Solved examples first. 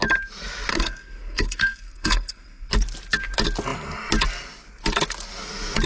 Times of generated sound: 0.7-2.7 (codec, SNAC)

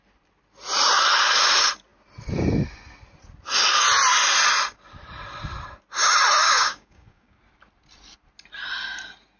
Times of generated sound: 6.4-7.4 (codec, DAC)

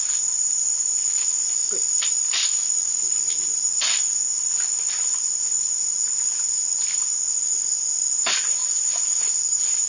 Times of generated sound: 1.6-4.0 (vocoder, BigVGAN v2)

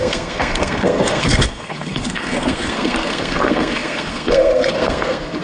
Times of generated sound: 0.0-5.4 (codec, SNAC)

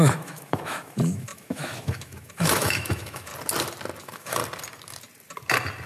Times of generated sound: 0.0-3.3 (autoencoder, DAC-VAE); 4.0-4.4

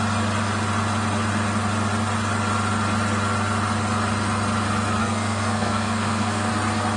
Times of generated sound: 5.0-6.5 (codec, SNAC)